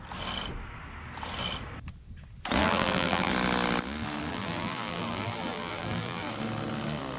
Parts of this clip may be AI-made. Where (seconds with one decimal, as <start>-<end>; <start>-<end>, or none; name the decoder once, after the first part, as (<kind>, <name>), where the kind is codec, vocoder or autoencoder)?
2.6-3.3 (vocoder, BigVGAN v2); 4.3-6.3